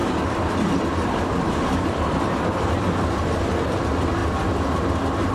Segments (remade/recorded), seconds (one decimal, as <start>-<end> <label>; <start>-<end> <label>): 0.0-2.8 remade; 2.8-5.3 recorded